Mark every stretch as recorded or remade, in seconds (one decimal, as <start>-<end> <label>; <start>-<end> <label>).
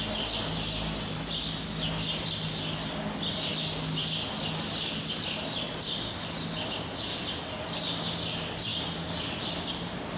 0.0-10.2 recorded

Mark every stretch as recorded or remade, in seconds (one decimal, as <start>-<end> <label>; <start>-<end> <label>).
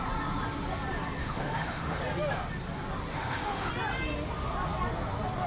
0.0-1.2 recorded; 1.2-2.0 remade; 2.0-3.1 recorded; 3.1-3.7 remade; 3.7-5.5 recorded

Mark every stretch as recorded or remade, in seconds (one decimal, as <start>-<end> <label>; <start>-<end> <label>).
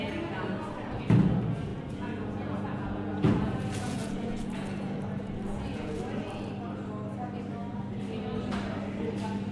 0.0-1.7 recorded; 1.7-6.0 remade; 6.0-9.5 recorded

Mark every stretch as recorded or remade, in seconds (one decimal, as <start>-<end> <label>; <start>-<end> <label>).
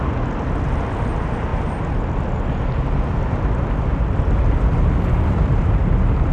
0.0-6.3 recorded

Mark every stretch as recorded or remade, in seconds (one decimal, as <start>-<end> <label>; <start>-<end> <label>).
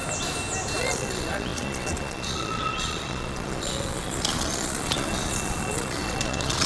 0.0-0.8 recorded; 0.8-6.7 remade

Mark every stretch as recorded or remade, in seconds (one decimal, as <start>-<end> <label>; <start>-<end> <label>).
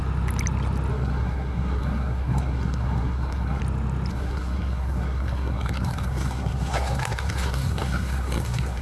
0.0-0.9 recorded; 0.9-3.6 remade; 3.6-4.1 recorded; 4.1-8.8 remade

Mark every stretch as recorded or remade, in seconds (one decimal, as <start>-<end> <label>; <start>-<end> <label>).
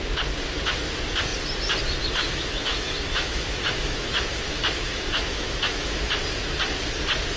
0.0-2.2 recorded; 2.2-6.0 remade; 6.0-7.4 recorded